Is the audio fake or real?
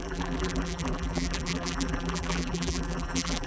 fake